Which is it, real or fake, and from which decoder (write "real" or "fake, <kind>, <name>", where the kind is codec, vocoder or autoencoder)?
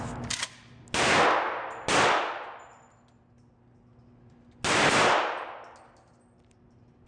real